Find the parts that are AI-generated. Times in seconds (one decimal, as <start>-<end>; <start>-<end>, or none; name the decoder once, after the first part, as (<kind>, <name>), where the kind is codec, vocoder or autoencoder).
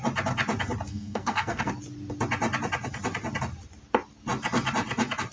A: 0.9-1.7 (codec, SNAC)